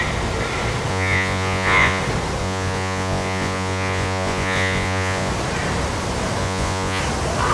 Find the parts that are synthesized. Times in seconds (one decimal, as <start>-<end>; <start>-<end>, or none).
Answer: 0.9-2.0; 2.4-5.3; 6.4-7.0